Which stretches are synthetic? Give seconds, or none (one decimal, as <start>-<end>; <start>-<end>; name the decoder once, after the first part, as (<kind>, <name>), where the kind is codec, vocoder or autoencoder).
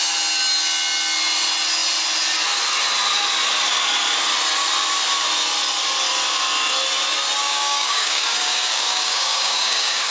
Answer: 7.4-10.1 (codec, DAC)